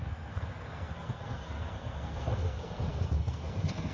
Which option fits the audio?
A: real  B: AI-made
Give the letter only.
B